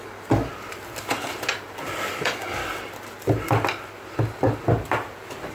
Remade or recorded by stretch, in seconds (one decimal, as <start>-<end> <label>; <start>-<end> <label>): 0.0-0.5 remade; 0.5-2.1 recorded; 2.1-2.6 remade; 2.6-5.5 recorded

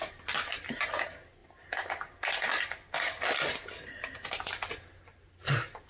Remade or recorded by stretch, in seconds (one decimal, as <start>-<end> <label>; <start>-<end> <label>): 0.0-5.9 recorded

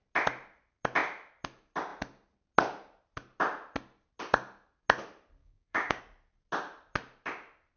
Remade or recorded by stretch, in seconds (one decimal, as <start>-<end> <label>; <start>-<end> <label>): 0.0-5.4 recorded; 5.4-6.0 remade; 6.0-7.8 recorded

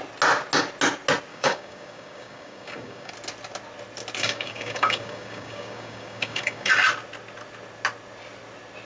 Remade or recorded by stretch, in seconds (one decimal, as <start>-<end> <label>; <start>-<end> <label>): 0.0-1.3 recorded; 1.3-3.1 remade; 3.1-4.2 recorded; 4.2-6.7 remade; 6.7-8.8 recorded

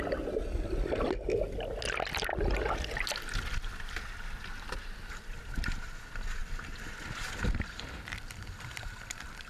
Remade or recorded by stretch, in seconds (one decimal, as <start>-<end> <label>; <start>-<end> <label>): 0.0-9.5 recorded

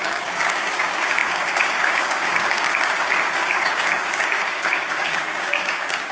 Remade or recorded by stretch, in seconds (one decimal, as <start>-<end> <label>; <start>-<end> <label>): 0.0-6.1 remade

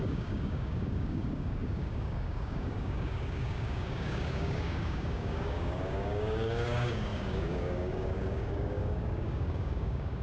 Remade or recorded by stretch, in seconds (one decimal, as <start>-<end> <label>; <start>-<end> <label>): 0.0-10.2 remade

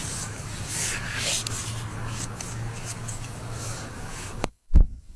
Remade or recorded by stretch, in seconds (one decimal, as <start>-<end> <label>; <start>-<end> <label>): 0.0-1.3 remade; 1.3-1.9 recorded; 1.9-5.2 remade